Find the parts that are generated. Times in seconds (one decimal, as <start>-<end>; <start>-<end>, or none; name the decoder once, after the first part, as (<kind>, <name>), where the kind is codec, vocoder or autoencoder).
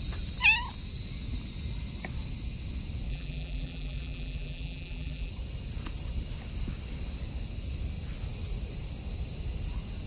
3.1-5.3 (vocoder, BigVGAN v2)